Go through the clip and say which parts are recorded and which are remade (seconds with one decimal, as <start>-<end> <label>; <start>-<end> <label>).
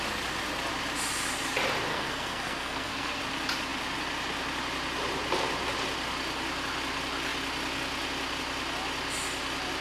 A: 0.0-1.9 recorded; 1.9-3.2 remade; 3.2-9.8 recorded